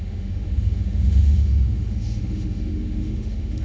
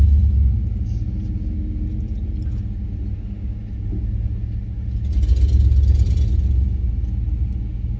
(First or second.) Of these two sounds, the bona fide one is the second